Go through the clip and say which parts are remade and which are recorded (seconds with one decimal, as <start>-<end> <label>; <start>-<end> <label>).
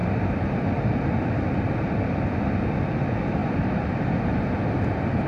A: 0.0-2.5 remade; 2.5-3.4 recorded; 3.4-5.3 remade